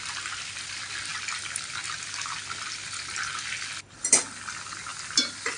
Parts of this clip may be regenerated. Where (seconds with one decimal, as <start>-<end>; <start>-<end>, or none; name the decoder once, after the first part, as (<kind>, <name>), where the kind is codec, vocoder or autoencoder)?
none

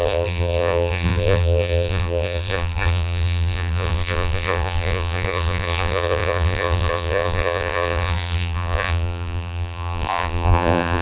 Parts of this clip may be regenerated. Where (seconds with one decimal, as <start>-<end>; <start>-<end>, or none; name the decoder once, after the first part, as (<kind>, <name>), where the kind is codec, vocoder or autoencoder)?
0.0-11.0 (vocoder, BigVGAN v2)

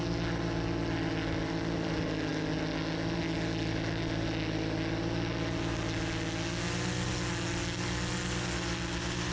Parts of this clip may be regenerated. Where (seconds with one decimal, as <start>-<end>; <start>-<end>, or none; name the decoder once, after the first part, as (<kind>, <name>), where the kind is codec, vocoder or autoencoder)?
none